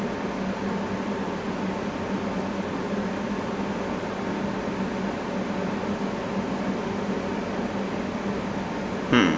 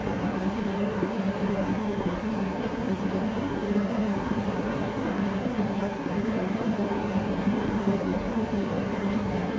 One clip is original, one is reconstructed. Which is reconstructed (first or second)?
second